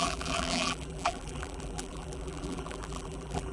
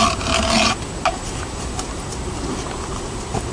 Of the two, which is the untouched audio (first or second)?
second